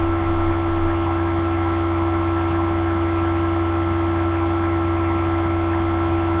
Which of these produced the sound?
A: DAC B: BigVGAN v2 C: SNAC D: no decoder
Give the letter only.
D